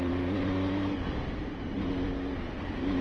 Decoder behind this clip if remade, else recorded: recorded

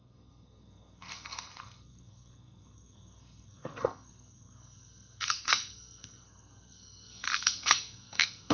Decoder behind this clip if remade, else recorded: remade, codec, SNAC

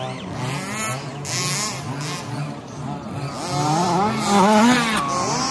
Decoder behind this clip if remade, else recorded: recorded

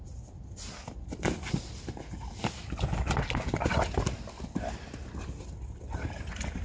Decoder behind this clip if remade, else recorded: recorded